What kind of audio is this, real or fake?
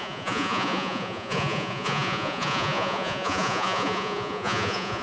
fake